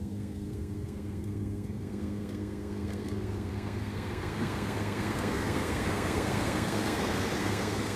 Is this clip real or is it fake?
fake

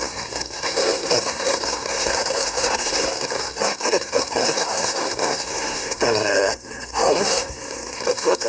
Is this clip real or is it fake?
fake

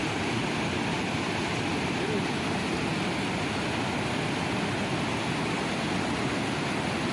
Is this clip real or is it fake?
real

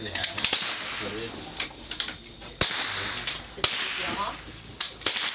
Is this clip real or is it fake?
real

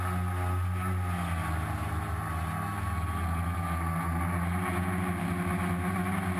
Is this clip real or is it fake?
real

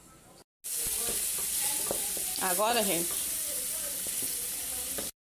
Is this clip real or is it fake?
real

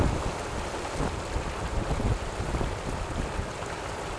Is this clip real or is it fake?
real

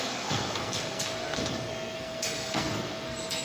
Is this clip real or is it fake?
fake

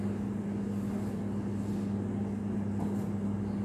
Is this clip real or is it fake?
real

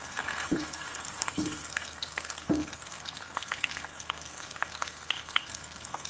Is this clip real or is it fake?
fake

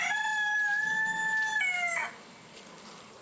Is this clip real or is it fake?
real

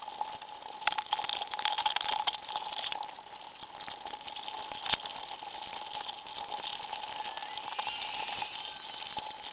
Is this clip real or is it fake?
real